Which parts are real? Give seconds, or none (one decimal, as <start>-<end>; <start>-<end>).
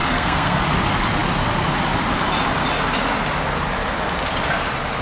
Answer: 0.6-5.0